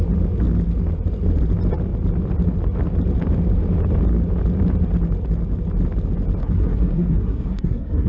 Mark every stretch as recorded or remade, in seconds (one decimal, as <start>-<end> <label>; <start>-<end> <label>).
0.0-6.4 recorded; 6.4-8.1 remade